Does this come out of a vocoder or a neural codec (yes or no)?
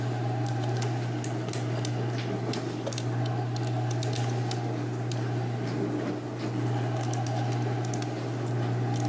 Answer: no